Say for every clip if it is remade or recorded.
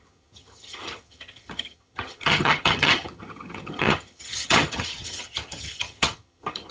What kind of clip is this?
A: remade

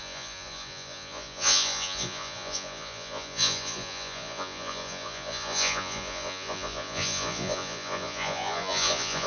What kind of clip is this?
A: remade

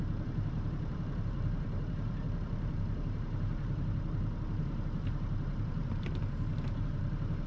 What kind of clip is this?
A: remade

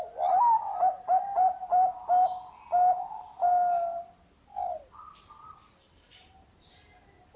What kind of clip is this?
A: recorded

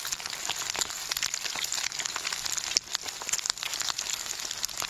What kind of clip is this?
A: recorded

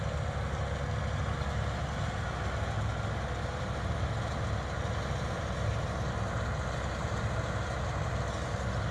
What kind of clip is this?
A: recorded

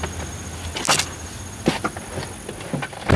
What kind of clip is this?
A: recorded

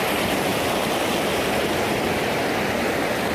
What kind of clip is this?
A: recorded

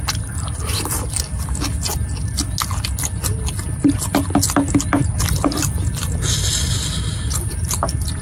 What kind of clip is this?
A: recorded